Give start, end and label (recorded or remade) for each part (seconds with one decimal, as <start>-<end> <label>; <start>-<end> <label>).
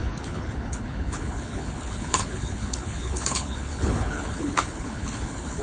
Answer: 0.0-5.6 remade